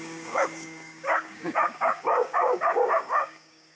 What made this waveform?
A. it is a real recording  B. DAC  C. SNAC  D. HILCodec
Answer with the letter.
B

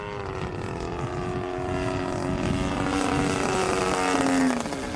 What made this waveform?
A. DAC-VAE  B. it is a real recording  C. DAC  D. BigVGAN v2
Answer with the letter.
B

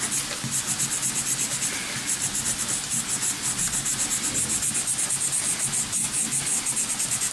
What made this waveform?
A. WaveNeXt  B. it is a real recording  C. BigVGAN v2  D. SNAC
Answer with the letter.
B